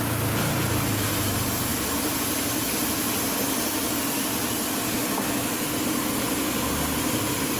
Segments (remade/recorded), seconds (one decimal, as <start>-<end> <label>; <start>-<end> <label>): 0.0-7.6 recorded